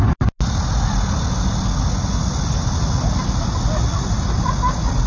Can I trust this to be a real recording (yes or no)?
yes